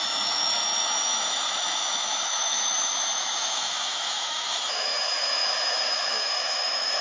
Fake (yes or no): yes